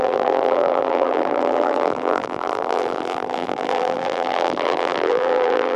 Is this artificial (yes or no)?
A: yes